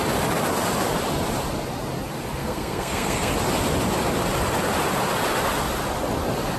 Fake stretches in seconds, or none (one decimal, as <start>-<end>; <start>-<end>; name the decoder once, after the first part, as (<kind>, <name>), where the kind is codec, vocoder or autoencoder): 2.4-3.3 (codec, SNAC)